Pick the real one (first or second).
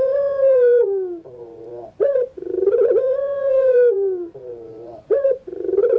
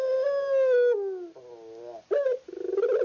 second